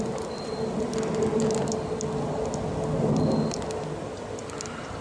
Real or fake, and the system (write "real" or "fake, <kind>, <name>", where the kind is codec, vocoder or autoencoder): real